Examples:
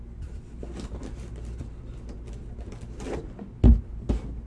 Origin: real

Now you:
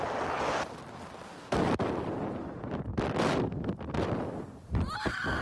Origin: real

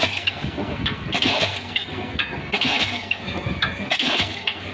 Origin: fake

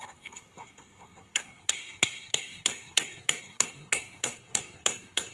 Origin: fake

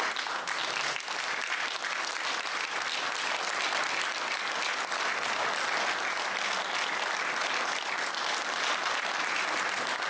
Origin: real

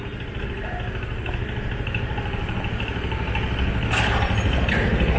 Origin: real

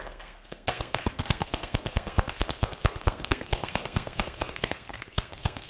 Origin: fake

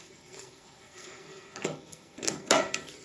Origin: fake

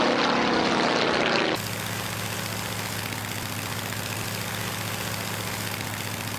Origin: real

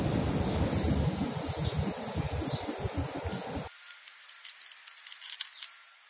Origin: real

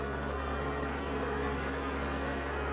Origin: fake